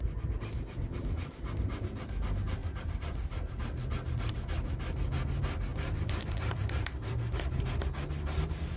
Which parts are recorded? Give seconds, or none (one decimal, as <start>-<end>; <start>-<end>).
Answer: 0.0-2.6; 3.5-5.7; 7.8-8.8